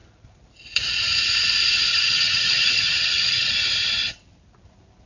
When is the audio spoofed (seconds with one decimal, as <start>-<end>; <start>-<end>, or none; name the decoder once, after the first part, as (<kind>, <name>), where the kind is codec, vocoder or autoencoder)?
1.9-3.5 (vocoder, HiFi-GAN)